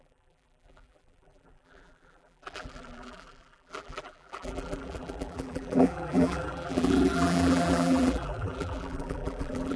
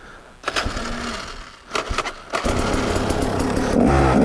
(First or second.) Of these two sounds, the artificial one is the first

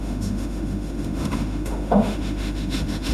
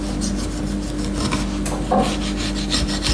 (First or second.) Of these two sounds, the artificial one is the first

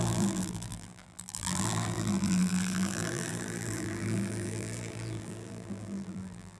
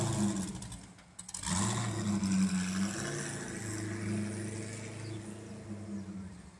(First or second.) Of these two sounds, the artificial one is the first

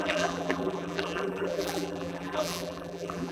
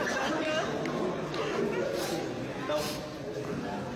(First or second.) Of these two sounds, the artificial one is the first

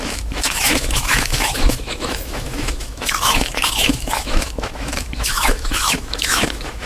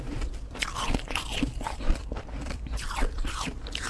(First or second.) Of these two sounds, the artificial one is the first